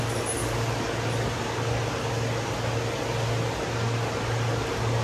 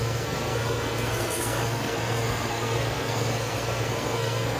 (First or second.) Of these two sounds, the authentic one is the first